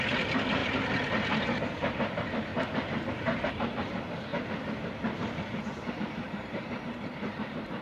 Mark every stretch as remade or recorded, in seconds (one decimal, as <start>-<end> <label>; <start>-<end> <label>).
0.0-2.5 remade; 2.5-3.1 recorded; 3.1-4.3 remade; 4.3-5.9 recorded; 5.9-7.8 remade